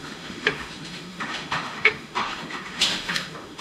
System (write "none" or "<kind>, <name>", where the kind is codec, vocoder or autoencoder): autoencoder, DAC-VAE